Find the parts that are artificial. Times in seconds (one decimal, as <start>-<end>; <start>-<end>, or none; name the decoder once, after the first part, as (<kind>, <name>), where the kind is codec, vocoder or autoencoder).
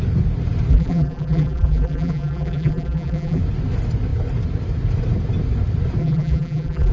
0.7-3.4 (vocoder, BigVGAN v2); 6.0-6.9